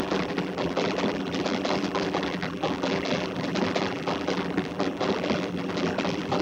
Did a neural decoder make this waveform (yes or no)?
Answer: yes